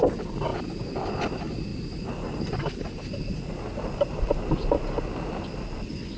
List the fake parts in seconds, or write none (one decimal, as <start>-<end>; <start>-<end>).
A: 0.5-1.2; 1.7-5.4